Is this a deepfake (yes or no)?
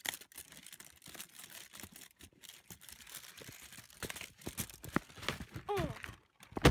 no